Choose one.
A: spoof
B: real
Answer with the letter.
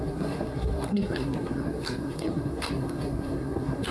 A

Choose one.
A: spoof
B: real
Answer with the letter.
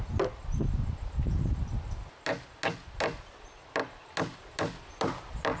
B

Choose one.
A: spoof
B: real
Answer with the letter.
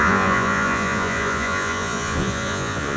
A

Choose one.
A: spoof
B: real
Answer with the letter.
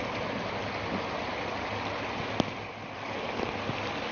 B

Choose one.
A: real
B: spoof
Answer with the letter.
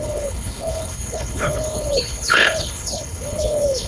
B